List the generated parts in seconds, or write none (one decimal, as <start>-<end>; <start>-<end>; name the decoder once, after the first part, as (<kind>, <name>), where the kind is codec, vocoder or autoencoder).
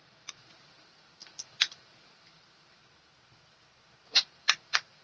0.0-2.8 (vocoder, BigVGAN v2); 4.2-5.0